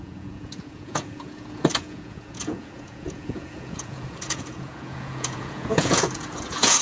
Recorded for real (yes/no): no